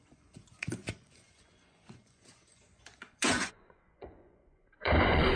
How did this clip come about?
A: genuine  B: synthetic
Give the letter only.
B